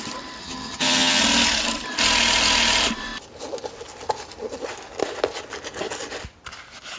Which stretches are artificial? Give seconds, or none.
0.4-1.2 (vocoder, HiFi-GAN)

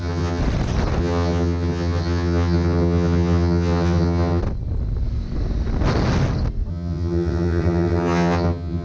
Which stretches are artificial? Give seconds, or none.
0.0-0.4 (vocoder, HiFi-GAN); 1.0-4.4; 6.7-8.8